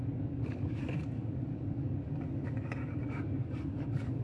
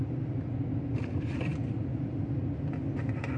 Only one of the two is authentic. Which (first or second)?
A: second